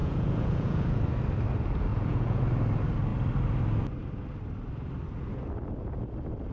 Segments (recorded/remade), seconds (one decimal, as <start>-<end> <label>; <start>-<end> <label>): 0.0-1.0 remade; 1.0-1.9 recorded; 1.9-2.4 remade; 2.4-6.5 recorded